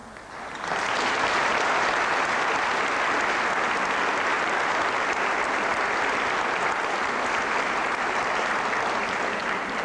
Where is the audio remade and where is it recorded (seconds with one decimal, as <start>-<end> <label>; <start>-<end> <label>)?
0.0-9.8 recorded